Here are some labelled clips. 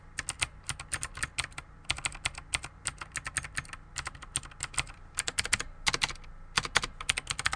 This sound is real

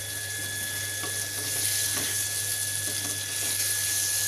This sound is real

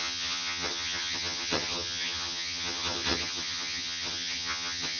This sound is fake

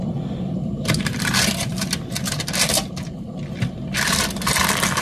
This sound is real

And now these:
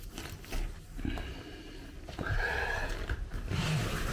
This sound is real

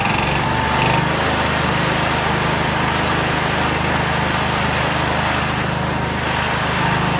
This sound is real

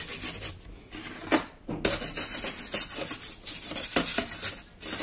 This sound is real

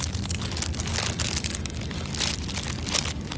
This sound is real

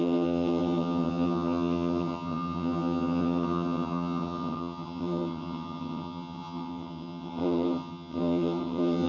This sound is fake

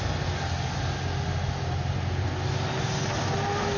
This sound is real